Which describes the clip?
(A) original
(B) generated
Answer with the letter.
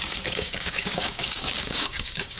B